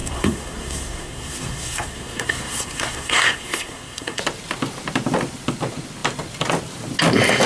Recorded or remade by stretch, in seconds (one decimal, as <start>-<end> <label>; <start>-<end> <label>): 0.0-4.2 remade; 4.2-7.5 recorded

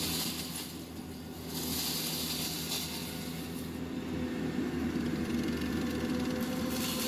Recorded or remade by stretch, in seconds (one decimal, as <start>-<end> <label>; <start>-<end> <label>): 0.0-7.1 recorded

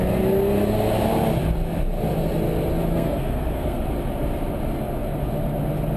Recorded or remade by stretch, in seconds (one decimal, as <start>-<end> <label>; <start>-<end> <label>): 0.0-2.9 recorded; 2.9-3.8 remade; 3.8-6.0 recorded

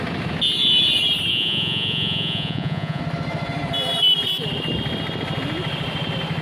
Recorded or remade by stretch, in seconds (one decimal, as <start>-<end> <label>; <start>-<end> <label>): 0.0-1.3 recorded; 1.3-3.0 remade; 3.0-6.4 recorded

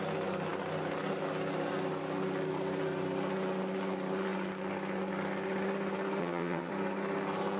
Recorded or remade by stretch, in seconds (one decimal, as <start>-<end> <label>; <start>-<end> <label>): 0.0-6.2 recorded; 6.2-6.7 remade; 6.7-7.6 recorded

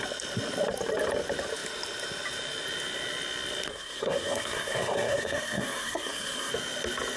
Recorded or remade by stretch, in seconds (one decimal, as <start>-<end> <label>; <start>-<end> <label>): 0.0-3.7 recorded; 3.7-6.5 remade; 6.5-7.2 recorded